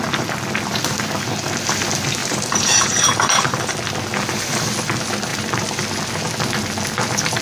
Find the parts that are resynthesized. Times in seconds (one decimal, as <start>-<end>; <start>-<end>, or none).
2.2-3.6